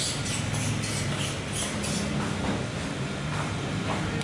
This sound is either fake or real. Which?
real